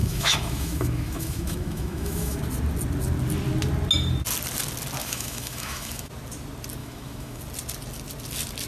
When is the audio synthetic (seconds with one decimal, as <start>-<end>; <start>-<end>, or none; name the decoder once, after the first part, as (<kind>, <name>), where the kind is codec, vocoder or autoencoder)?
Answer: 0.0-2.4 (autoencoder, DAC-VAE); 5.0-6.1; 6.8-7.4